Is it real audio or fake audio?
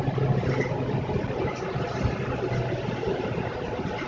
real